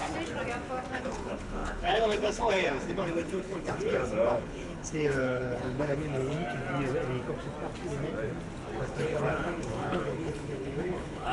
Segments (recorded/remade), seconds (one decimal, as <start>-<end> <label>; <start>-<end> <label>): 0.0-1.0 recorded; 1.0-6.2 remade; 6.2-8.8 recorded; 8.8-11.3 remade